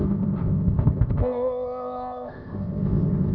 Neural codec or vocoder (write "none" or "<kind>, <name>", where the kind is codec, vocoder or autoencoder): codec, ZipCodec